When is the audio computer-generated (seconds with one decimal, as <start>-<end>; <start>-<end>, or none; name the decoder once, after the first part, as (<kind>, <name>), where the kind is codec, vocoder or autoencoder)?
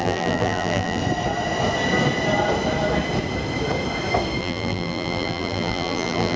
0.0-1.0 (vocoder, BigVGAN v2); 4.4-6.4